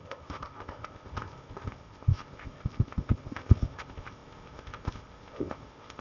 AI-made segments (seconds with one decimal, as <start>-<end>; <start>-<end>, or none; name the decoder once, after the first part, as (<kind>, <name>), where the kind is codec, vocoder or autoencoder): 0.0-6.0 (codec, ZipCodec)